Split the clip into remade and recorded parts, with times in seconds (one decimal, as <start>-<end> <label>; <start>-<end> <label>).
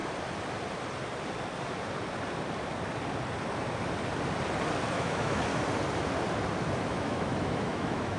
0.0-4.9 recorded; 4.9-5.5 remade; 5.5-6.9 recorded; 6.9-8.2 remade